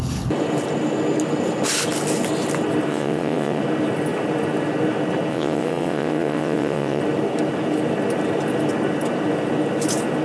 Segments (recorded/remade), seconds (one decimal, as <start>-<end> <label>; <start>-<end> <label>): 0.0-2.9 recorded; 2.9-3.6 remade; 3.6-5.3 recorded; 5.3-7.0 remade; 7.0-10.2 recorded